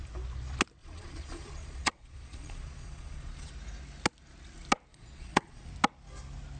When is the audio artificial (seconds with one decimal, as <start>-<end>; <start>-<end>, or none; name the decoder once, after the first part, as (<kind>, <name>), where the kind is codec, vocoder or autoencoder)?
0.8-3.5 (vocoder, Vocos); 4.9-5.7